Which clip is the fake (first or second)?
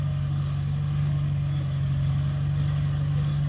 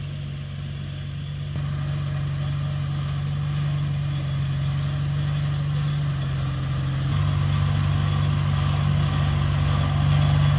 first